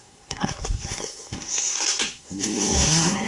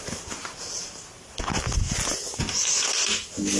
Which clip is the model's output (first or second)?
first